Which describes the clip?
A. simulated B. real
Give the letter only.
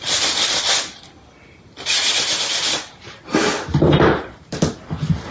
A